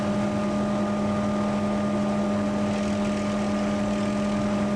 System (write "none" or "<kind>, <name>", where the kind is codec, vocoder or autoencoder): none